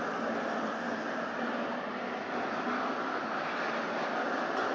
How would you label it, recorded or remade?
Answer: recorded